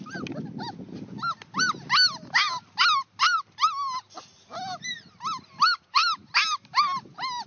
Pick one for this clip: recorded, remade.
recorded